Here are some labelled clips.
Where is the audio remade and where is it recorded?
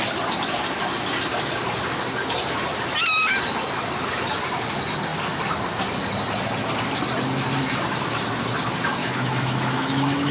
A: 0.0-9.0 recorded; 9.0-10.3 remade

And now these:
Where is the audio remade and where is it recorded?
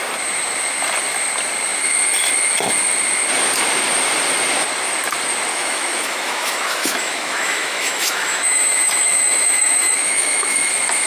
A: 0.0-5.5 recorded; 5.5-10.7 remade; 10.7-11.1 recorded